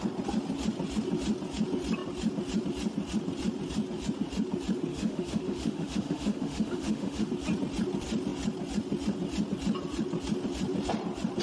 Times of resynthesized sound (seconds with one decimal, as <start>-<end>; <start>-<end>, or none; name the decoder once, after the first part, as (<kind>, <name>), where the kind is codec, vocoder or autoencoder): 4.9-7.3 (autoencoder, DAC-VAE)